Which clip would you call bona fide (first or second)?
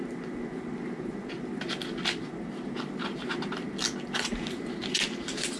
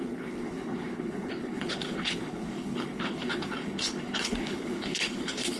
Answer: first